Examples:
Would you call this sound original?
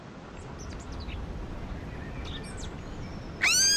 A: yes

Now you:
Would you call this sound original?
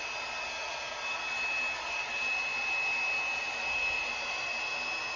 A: yes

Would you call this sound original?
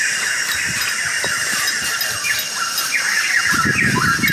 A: yes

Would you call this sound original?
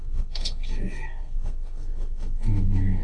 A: no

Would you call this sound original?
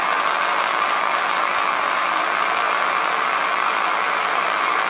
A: no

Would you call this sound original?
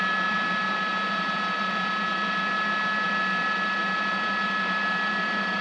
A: yes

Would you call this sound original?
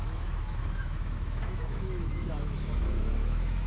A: no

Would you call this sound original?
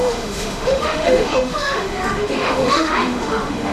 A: no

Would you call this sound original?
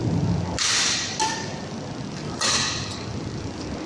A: yes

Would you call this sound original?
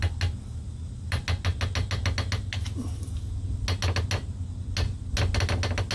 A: yes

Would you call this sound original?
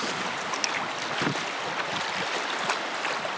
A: yes